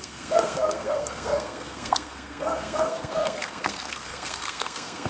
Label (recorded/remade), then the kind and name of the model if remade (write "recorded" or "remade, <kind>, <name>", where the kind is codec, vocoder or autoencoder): remade, codec, SNAC